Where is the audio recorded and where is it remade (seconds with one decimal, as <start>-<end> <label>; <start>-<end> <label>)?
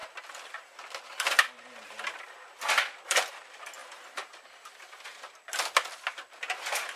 0.0-7.0 recorded